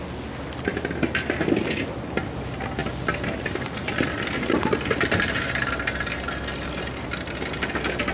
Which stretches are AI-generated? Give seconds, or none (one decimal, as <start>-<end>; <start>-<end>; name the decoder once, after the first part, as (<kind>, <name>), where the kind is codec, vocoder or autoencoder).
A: none